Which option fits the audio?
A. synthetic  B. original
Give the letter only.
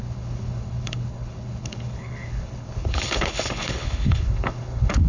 A